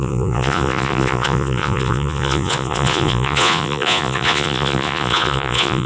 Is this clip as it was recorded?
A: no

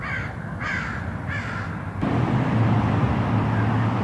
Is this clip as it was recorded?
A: yes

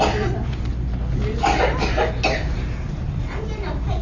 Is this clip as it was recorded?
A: yes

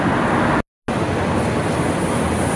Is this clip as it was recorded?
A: yes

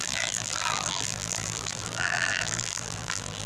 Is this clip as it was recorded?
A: no